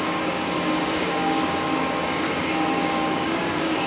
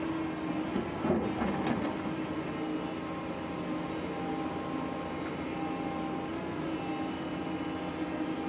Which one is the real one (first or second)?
second